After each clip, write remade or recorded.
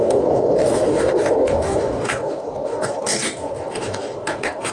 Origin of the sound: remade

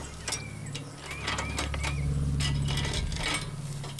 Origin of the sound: recorded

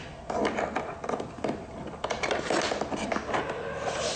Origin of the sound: remade